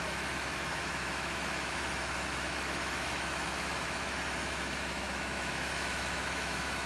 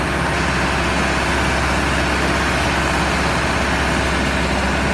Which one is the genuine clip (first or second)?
second